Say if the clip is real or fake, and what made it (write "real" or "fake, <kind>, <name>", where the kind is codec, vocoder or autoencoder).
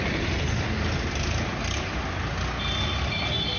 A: real